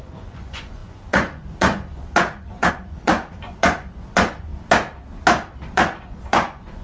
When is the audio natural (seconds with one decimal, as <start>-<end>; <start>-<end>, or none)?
4.5-5.7